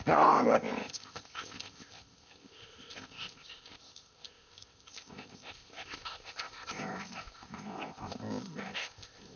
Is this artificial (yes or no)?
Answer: yes